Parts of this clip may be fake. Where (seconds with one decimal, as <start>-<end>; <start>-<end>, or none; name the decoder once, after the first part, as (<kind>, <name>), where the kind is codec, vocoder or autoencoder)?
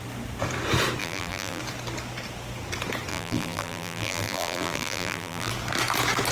1.0-1.6 (vocoder, BigVGAN v2); 3.1-5.5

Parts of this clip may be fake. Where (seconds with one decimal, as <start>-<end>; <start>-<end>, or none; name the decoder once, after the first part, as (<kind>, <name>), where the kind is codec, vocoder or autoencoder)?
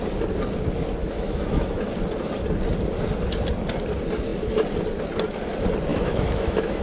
1.0-1.9 (autoencoder, DAC-VAE); 5.9-6.8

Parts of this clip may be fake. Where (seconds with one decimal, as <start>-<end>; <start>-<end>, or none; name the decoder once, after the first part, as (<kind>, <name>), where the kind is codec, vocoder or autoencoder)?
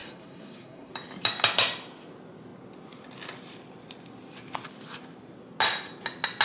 0.0-0.9 (codec, SNAC)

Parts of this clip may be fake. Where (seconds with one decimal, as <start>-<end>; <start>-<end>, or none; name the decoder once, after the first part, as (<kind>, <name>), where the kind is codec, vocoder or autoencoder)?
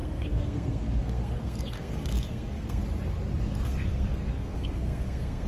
0.0-2.8 (codec, SNAC); 3.4-5.5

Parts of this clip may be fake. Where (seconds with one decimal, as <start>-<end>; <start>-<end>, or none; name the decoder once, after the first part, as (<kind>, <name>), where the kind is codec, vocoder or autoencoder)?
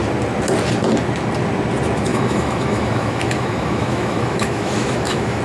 2.1-5.4 (autoencoder, DAC-VAE)